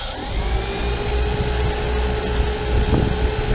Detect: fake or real real